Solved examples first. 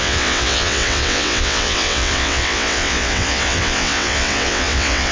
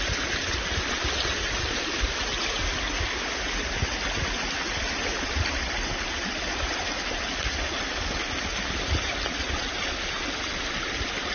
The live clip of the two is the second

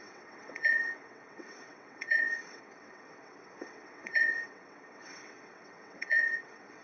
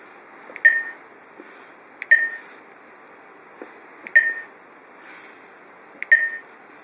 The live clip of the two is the second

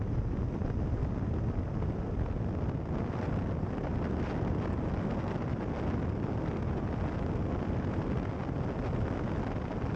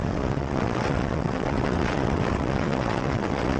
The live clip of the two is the first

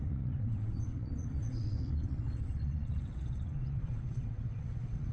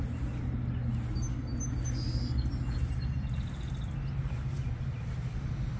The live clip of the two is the second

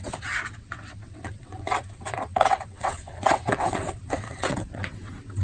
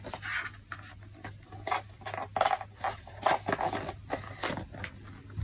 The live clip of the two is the second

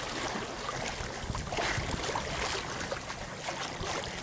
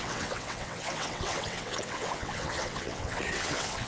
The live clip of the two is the first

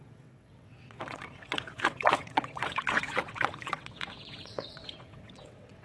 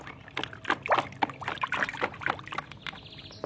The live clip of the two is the second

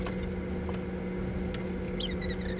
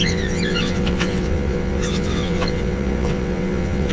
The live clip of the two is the first